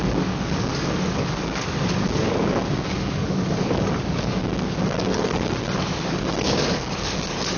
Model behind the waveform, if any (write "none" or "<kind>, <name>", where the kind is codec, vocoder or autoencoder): codec, DAC